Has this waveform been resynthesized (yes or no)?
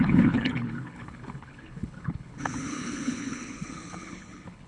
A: yes